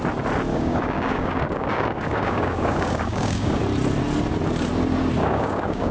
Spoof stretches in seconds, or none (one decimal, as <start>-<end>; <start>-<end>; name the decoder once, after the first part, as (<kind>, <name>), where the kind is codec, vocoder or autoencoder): 0.5-3.6 (codec, DAC); 5.2-5.9